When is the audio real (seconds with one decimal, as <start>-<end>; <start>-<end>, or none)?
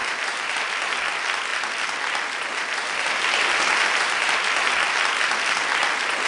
0.0-6.3